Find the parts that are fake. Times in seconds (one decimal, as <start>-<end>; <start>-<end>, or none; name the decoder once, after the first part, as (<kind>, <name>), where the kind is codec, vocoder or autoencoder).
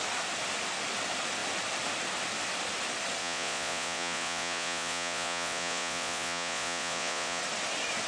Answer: 3.2-7.4 (vocoder, Vocos)